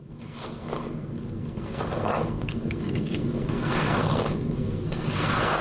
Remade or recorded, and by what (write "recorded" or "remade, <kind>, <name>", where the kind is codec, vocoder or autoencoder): remade, codec, SNAC